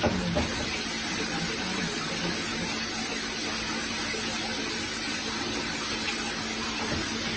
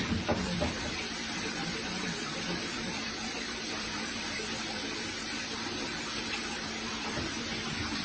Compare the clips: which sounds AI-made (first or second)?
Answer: second